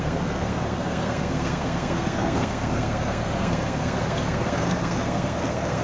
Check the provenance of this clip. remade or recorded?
remade